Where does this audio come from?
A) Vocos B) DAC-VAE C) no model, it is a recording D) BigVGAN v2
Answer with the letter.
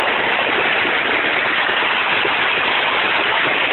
C